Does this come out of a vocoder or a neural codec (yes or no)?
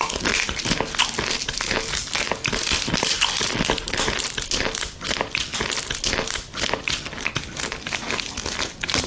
no